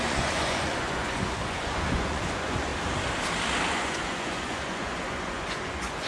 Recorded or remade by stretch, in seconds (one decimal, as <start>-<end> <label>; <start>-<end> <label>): 0.0-2.7 remade; 2.7-3.7 recorded; 3.7-6.1 remade

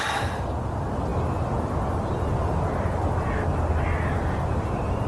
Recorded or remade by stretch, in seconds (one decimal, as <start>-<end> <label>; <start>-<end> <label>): 0.0-5.1 recorded

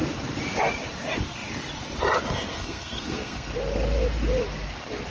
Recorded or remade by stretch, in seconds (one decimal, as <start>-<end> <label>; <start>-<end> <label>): 0.0-2.5 recorded; 2.5-3.5 remade; 3.5-5.1 recorded

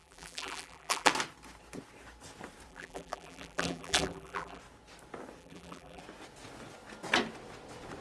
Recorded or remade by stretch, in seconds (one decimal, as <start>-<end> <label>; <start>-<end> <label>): 0.0-1.1 remade; 1.1-2.7 recorded; 2.7-4.6 remade; 4.6-5.4 recorded; 5.4-6.0 remade; 6.0-8.0 recorded

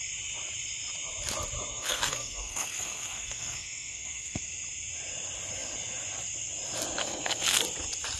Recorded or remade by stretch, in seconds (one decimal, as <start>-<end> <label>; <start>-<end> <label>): 0.0-1.7 recorded; 1.7-4.4 remade; 4.4-7.0 recorded; 7.0-7.6 remade; 7.6-8.2 recorded